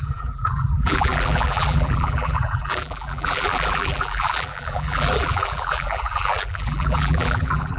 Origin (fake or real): fake